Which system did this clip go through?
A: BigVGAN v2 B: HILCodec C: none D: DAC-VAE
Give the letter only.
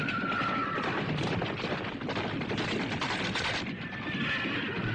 C